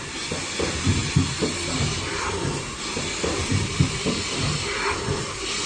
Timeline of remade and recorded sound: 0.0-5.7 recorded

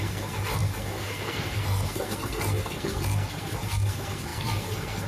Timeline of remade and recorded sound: 0.0-5.1 remade

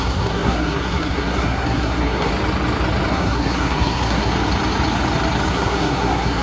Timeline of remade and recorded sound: 0.0-2.3 remade; 2.3-3.1 recorded; 3.1-4.3 remade; 4.3-5.5 recorded; 5.5-6.4 remade

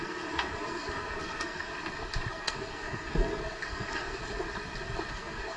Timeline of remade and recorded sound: 0.0-1.7 remade; 1.7-2.3 recorded; 2.3-4.2 remade; 4.2-5.1 recorded; 5.1-5.6 remade

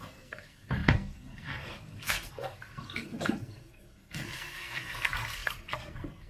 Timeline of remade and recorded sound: 0.0-6.3 remade

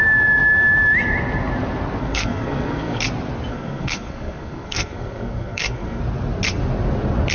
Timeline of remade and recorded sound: 0.0-2.0 recorded; 2.0-3.0 remade; 3.0-3.5 recorded; 3.5-6.0 remade; 6.0-7.3 recorded

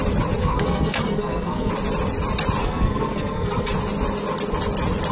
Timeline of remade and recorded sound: 0.0-0.4 recorded; 0.4-1.7 remade; 1.7-2.6 recorded; 2.6-3.7 remade; 3.7-5.1 recorded